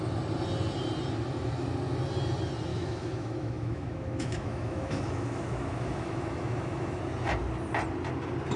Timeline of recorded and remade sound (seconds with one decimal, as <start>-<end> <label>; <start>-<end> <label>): 0.0-2.7 recorded; 2.7-7.0 remade; 7.0-8.6 recorded